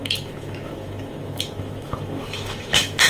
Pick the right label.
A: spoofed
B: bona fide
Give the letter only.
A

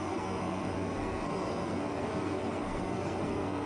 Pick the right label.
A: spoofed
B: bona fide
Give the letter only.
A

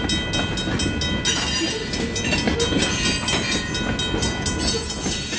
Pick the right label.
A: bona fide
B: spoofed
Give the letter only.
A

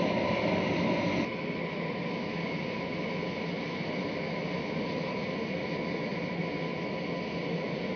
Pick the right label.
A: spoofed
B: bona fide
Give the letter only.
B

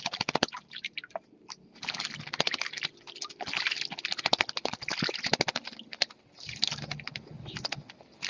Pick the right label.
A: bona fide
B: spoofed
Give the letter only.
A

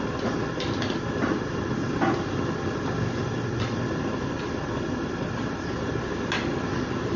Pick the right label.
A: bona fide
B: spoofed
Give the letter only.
A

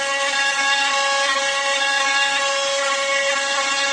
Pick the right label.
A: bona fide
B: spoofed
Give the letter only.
A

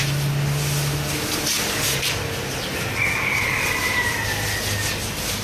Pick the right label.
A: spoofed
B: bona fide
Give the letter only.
B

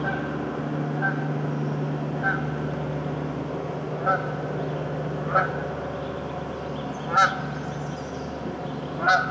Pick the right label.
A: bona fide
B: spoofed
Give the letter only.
A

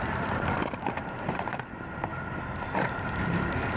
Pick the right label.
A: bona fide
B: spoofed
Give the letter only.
B